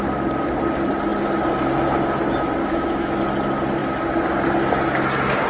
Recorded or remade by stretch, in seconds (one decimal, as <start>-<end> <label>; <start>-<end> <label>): 0.0-2.6 recorded; 2.6-3.2 remade; 3.2-5.5 recorded